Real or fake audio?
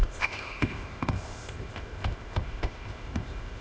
fake